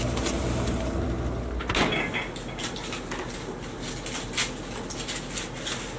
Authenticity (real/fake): real